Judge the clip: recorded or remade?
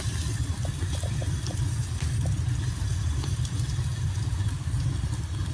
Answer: recorded